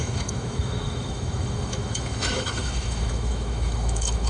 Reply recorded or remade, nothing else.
remade